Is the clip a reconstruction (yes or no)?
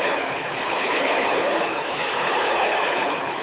yes